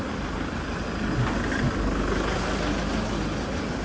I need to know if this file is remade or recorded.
recorded